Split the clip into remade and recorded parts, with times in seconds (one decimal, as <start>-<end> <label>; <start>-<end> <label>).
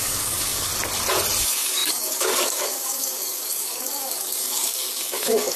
0.0-0.7 remade; 0.7-1.4 recorded; 1.4-5.6 remade